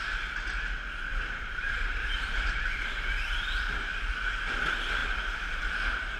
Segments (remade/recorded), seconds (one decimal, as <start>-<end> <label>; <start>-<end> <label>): 0.0-1.1 recorded; 1.1-4.1 remade; 4.1-5.0 recorded; 5.0-5.6 remade; 5.6-6.2 recorded